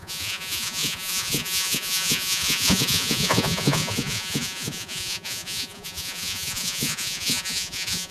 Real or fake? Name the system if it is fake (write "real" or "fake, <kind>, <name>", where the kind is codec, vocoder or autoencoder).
fake, vocoder, Vocos